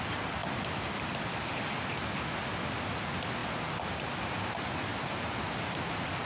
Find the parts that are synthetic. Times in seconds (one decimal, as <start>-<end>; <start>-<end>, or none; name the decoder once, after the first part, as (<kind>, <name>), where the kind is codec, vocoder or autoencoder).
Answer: 4.9-6.2 (vocoder, BigVGAN v2)